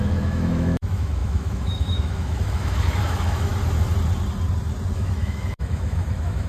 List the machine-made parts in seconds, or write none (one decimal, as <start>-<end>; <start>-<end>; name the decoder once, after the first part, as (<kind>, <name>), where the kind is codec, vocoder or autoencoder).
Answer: 0.0-3.5 (autoencoder, DAC-VAE); 4.9-6.5